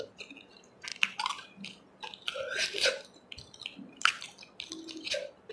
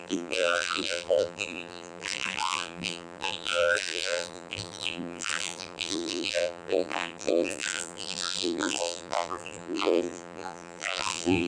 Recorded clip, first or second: first